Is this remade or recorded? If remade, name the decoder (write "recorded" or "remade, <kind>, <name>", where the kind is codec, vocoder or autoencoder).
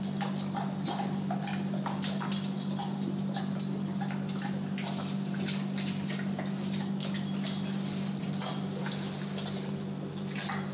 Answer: recorded